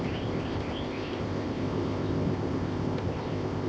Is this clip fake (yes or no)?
yes